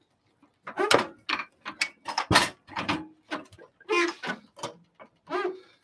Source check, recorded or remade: recorded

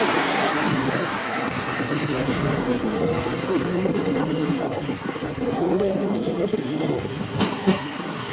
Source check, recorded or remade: remade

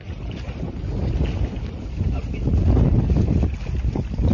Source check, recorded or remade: recorded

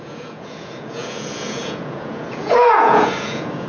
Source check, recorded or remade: remade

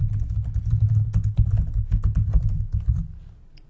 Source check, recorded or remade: recorded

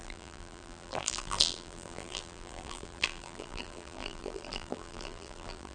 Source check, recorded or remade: remade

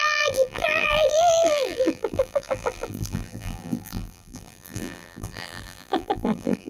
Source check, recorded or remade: remade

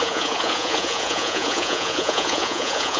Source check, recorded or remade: remade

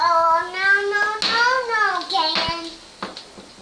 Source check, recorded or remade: recorded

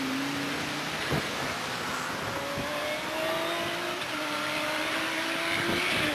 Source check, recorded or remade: recorded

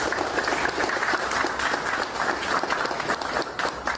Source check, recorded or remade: remade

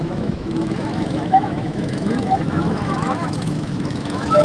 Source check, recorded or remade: remade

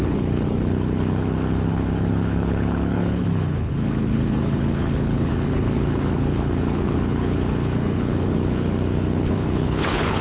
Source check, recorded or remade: remade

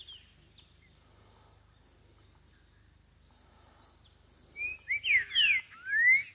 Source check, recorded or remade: recorded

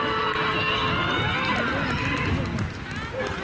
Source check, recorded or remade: recorded